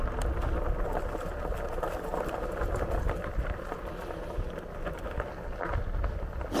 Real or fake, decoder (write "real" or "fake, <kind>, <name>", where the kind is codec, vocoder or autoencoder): real